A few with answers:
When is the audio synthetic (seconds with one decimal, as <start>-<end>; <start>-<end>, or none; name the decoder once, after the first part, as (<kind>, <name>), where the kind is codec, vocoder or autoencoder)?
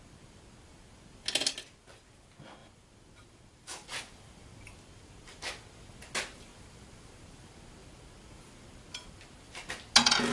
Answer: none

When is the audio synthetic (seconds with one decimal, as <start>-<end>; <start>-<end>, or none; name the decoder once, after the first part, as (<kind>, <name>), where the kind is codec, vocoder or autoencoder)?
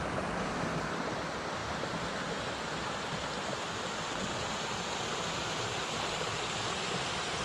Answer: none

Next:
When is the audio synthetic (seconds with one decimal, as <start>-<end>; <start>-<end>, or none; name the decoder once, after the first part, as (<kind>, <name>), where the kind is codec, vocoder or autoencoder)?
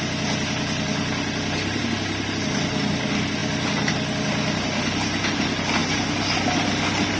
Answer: none